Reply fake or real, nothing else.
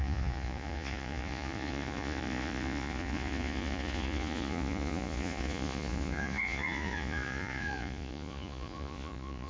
fake